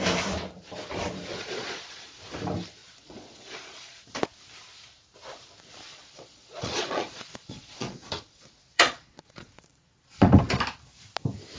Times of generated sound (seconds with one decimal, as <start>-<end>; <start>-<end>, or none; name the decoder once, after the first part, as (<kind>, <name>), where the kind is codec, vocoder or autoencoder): 1.3-2.2 (vocoder, Vocos); 2.8-4.0; 5.9-10.4